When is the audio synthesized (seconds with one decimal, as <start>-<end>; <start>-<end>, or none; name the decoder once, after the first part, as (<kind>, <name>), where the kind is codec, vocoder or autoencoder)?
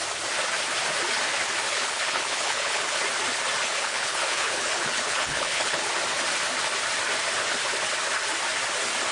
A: 1.7-3.0 (codec, HILCodec); 3.7-5.9